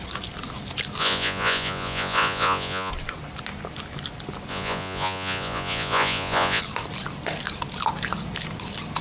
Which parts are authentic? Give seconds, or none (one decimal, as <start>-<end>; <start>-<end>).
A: 0.0-1.0; 2.9-4.5; 6.6-9.0